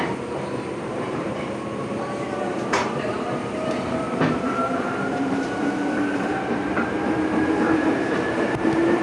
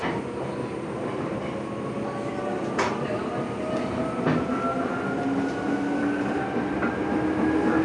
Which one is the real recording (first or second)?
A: second